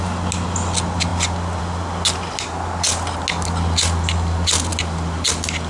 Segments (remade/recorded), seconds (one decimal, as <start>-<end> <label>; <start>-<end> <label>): 0.0-5.7 recorded